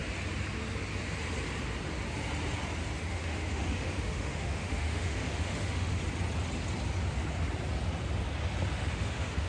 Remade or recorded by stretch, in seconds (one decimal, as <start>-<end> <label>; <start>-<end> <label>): 0.0-3.1 recorded; 3.1-6.0 remade; 6.0-8.7 recorded; 8.7-9.5 remade